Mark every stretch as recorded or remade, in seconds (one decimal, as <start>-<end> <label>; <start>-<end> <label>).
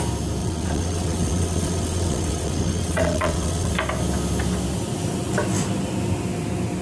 0.0-0.4 recorded; 0.4-3.7 remade; 3.7-6.8 recorded